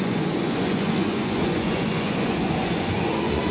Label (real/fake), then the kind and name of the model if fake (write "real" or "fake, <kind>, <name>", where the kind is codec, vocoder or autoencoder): fake, vocoder, Vocos